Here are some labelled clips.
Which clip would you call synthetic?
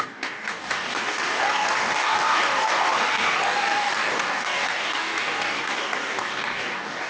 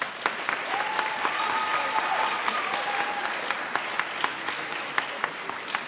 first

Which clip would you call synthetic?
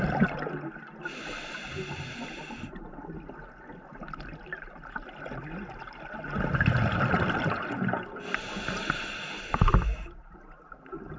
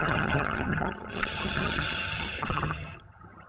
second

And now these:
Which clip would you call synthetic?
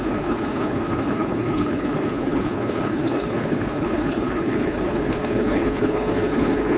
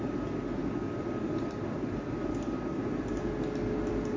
first